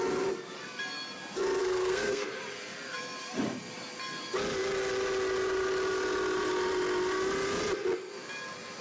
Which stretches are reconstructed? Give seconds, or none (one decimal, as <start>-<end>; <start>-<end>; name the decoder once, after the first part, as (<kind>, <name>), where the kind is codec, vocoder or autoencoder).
1.6-2.3 (codec, SNAC)